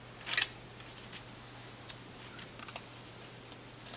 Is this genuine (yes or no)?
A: yes